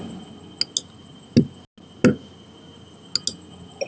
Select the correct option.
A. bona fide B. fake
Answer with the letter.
A